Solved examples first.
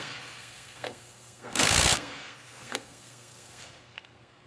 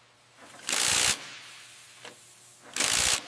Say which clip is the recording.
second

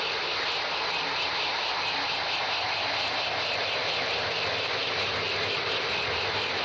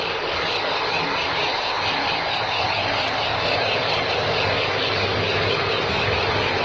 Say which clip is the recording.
first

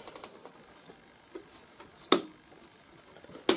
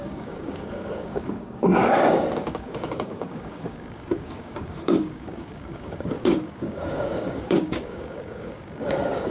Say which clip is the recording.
first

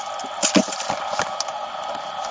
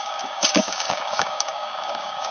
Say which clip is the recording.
first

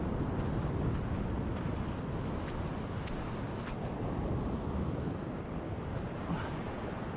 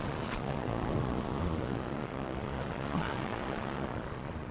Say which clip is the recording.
first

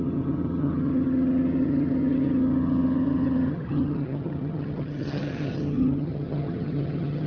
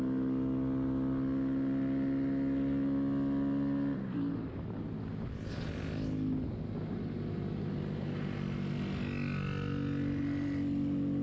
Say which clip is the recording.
second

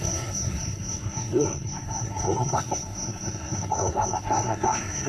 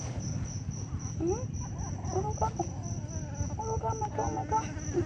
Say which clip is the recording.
second